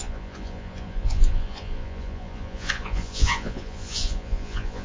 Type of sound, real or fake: fake